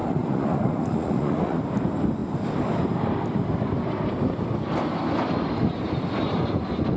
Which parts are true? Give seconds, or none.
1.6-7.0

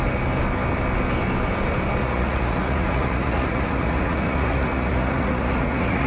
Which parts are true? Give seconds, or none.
0.0-2.0

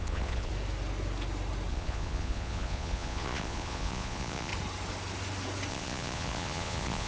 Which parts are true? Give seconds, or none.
0.5-1.7; 4.5-5.7

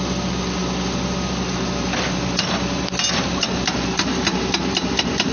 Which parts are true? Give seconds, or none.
0.0-5.3

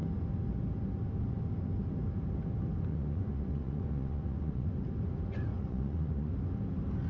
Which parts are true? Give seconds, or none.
0.0-2.9; 4.7-5.5; 6.3-7.1

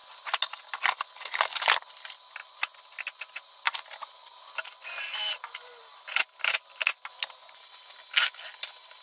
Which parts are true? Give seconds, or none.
0.0-9.0

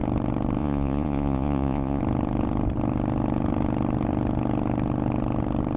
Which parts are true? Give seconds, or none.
0.0-0.6; 2.0-5.8